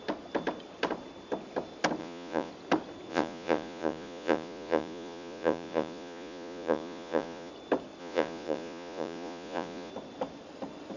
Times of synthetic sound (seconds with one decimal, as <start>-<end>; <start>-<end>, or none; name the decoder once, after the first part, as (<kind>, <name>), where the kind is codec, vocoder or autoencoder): 2.0-2.5 (vocoder, Vocos); 3.1-7.5; 8.0-9.9